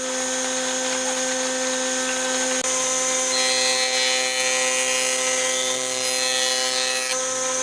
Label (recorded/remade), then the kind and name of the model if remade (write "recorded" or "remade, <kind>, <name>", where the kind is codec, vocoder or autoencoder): recorded